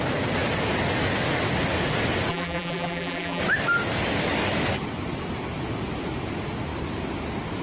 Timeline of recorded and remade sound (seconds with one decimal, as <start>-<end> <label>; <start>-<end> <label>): 0.0-2.3 recorded; 2.3-3.4 remade; 3.4-7.6 recorded